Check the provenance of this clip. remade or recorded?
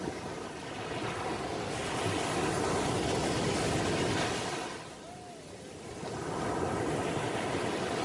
recorded